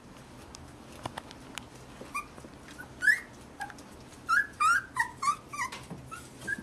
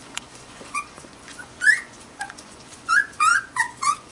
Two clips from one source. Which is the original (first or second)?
first